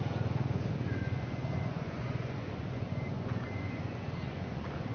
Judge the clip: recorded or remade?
remade